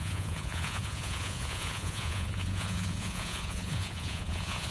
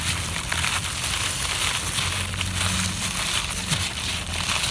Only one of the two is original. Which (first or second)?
second